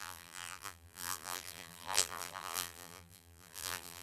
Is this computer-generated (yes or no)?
yes